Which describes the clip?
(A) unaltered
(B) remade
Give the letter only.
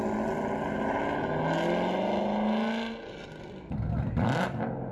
A